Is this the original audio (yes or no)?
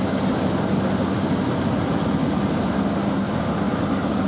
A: yes